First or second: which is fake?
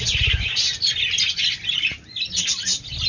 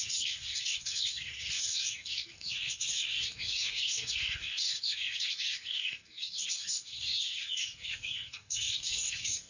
second